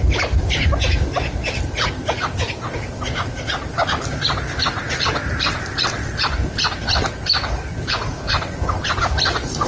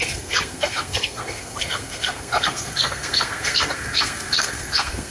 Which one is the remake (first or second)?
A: second